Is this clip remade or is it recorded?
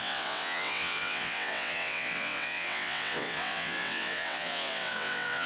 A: remade